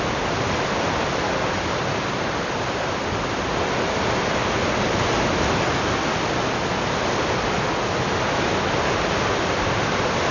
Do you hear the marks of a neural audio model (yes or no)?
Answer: no